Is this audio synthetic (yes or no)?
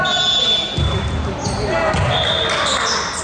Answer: no